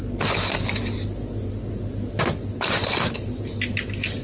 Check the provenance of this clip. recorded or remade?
recorded